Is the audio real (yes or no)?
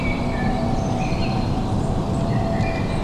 no